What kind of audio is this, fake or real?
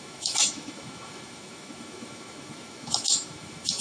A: fake